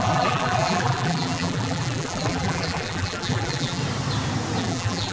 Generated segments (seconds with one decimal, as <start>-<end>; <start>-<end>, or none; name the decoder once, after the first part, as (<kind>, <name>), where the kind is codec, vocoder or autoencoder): 0.0-3.8 (vocoder, BigVGAN v2); 4.6-5.1

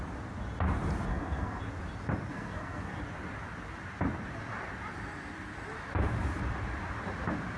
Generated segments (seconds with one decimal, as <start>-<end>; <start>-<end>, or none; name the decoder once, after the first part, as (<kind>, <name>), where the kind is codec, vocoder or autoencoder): 1.1-1.6 (codec, SNAC); 2.3-3.0